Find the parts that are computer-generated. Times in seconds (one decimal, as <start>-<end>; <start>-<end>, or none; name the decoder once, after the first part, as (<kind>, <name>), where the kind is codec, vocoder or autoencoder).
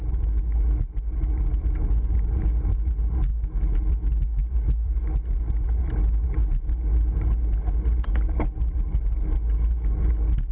none